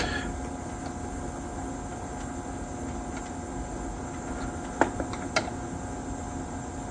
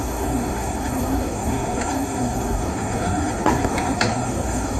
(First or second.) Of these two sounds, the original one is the first